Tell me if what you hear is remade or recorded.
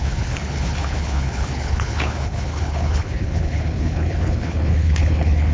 remade